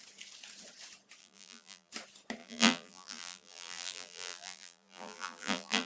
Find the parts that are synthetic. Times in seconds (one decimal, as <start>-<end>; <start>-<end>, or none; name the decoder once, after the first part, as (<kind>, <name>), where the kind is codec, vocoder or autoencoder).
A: 1.2-1.9 (vocoder, BigVGAN v2); 2.4-5.9